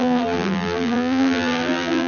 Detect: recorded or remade remade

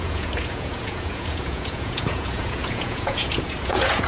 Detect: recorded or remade remade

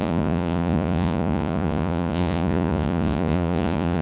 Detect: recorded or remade remade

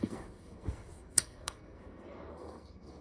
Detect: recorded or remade remade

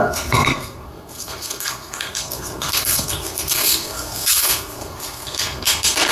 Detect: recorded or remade remade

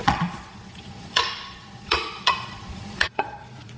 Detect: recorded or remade remade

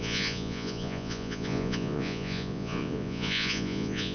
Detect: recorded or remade remade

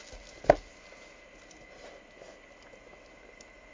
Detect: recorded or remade recorded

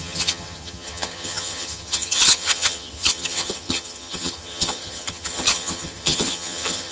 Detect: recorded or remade remade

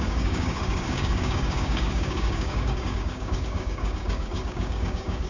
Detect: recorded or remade remade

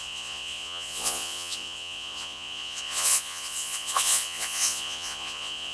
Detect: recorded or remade remade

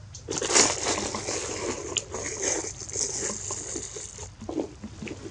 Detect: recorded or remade recorded